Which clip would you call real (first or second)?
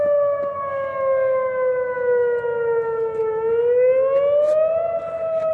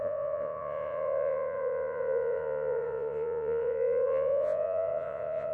first